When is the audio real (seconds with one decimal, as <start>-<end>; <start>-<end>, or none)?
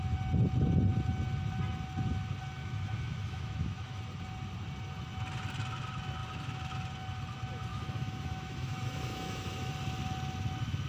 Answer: 0.0-2.6; 4.0-7.7; 9.7-10.9